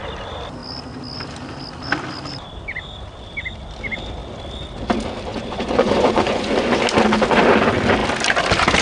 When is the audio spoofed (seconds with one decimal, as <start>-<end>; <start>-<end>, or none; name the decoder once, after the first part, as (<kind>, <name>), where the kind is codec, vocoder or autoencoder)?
5.3-6.5 (vocoder, Vocos)